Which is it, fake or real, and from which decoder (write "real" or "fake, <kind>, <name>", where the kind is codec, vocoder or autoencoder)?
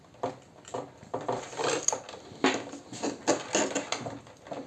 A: real